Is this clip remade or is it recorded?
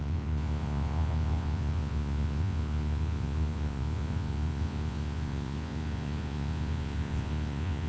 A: remade